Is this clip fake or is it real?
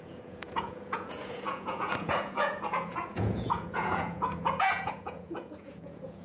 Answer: fake